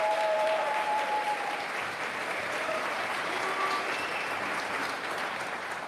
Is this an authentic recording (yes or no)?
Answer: no